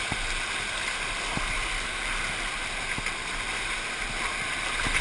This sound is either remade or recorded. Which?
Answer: recorded